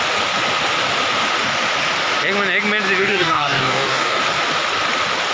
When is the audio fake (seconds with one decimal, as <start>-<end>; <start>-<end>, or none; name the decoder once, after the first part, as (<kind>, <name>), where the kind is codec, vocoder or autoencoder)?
3.0-4.2 (codec, DAC)